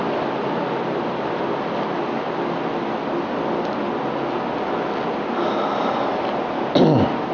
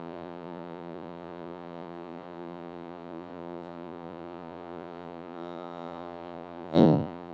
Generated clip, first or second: second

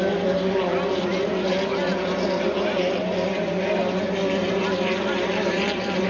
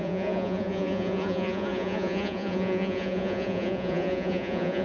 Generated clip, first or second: second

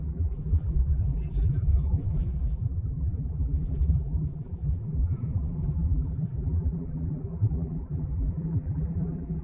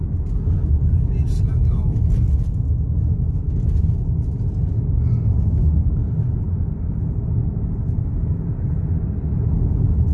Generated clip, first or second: first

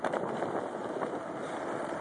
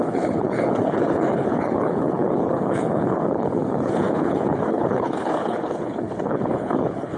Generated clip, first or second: second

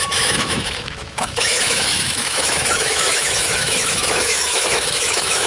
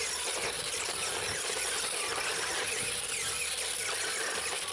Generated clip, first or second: first